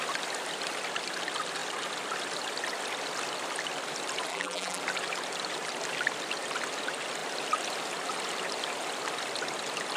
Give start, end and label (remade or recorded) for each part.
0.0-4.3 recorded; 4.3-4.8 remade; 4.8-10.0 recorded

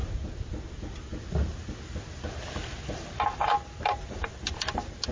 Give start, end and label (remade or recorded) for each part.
0.0-0.7 remade; 0.7-5.1 recorded

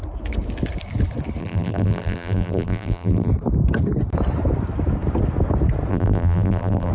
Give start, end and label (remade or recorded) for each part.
0.0-1.4 recorded; 1.4-3.3 remade; 3.3-5.9 recorded; 5.9-6.9 remade

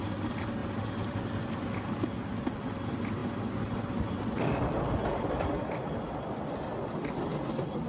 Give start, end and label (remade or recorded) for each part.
0.0-0.6 recorded; 0.6-1.9 remade; 1.9-7.9 recorded

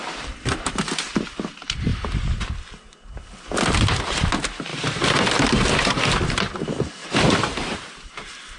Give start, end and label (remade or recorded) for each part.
0.0-4.7 recorded; 4.7-6.0 remade; 6.0-7.0 recorded; 7.0-8.1 remade; 8.1-8.6 recorded

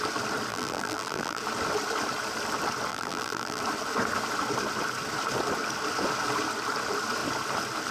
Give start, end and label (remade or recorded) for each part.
0.0-0.5 recorded; 0.5-1.4 remade; 1.4-2.9 recorded; 2.9-3.6 remade; 3.6-7.9 recorded

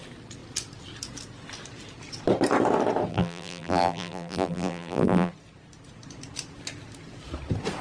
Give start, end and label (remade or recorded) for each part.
0.0-3.1 recorded; 3.1-5.3 remade; 5.3-7.8 recorded